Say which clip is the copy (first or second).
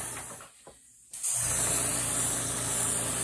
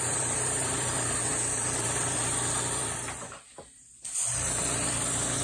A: second